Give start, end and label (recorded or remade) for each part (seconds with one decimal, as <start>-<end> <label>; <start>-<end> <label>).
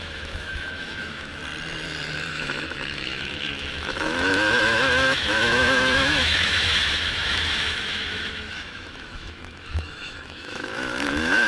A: 0.0-1.4 remade; 1.4-2.3 recorded; 2.3-11.5 remade